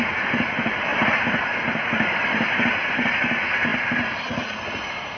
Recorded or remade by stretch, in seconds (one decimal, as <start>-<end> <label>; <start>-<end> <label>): 0.0-5.2 recorded